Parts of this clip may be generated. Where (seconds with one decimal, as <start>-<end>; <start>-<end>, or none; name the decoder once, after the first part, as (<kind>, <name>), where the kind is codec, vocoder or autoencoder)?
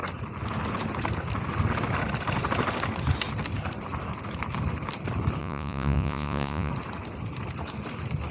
5.4-6.7 (vocoder, Vocos)